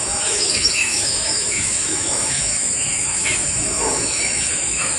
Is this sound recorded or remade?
remade